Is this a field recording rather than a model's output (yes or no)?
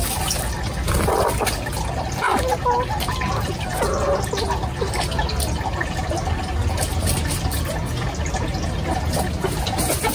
yes